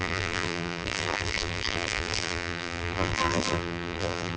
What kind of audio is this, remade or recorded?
remade